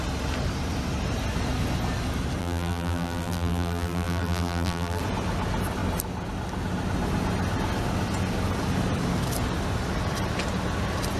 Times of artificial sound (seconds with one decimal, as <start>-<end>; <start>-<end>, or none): 2.4-5.0